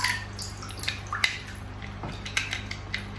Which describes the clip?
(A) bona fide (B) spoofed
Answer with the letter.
A